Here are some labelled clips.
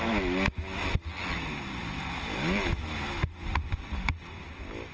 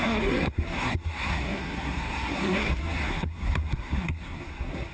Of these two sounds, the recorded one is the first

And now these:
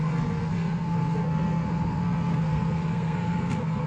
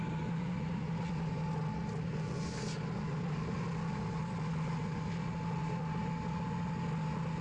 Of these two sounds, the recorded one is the second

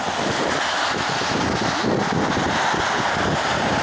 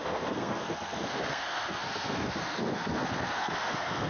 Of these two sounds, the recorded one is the first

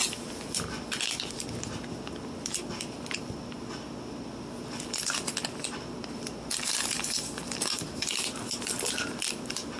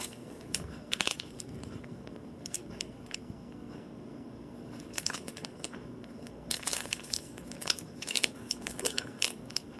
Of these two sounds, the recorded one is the first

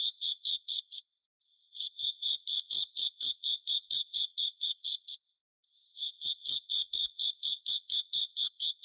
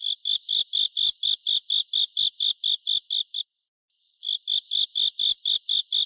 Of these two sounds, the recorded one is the second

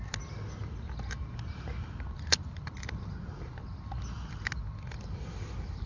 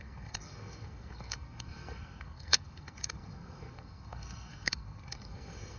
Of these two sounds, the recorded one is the first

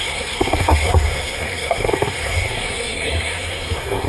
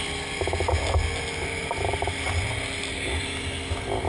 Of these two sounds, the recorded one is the second